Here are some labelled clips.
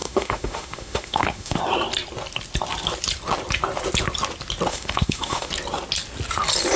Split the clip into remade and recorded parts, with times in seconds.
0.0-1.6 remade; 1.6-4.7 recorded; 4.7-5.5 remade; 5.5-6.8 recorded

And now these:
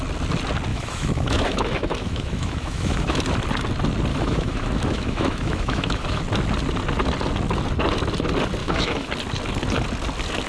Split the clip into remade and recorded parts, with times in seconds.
0.0-0.7 recorded; 0.7-3.2 remade; 3.2-4.1 recorded; 4.1-6.2 remade; 6.2-8.6 recorded; 8.6-9.1 remade; 9.1-10.5 recorded

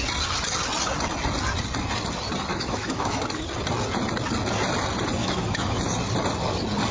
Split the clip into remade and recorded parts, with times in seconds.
0.0-2.5 recorded; 2.5-3.2 remade; 3.2-5.2 recorded; 5.2-5.8 remade; 5.8-6.9 recorded

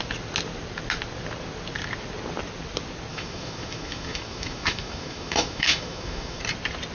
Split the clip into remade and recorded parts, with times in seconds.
0.0-3.1 recorded; 3.1-6.4 remade; 6.4-6.9 recorded

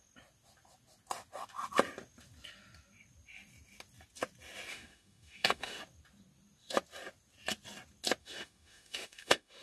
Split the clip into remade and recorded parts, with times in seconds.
0.0-4.7 recorded; 4.7-5.8 remade; 5.8-8.2 recorded; 8.2-9.6 remade

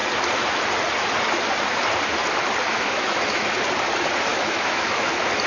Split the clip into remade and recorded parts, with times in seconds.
0.0-2.7 recorded; 2.7-3.5 remade; 3.5-4.3 recorded; 4.3-5.1 remade; 5.1-5.5 recorded